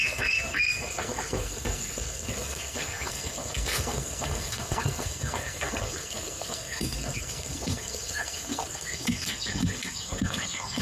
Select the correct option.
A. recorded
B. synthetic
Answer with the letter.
B